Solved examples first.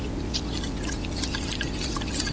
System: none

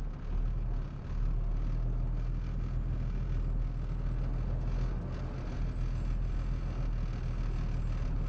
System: none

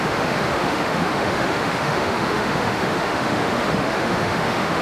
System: autoencoder, DAC-VAE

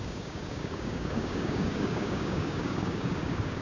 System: codec, DAC